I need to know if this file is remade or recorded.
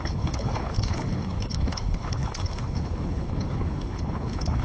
remade